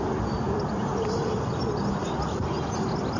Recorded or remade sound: recorded